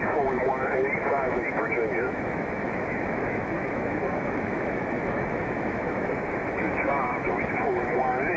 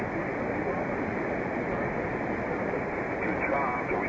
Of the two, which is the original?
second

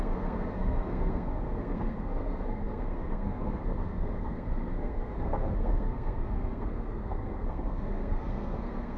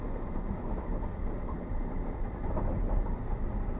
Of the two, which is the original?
second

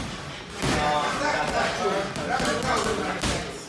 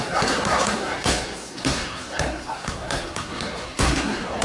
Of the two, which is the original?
first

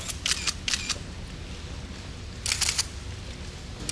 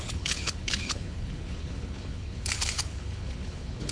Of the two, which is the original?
first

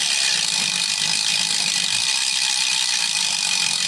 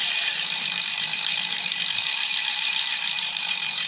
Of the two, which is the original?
first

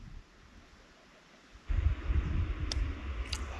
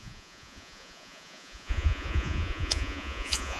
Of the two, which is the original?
first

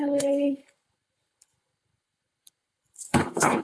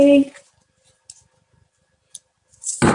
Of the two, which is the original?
second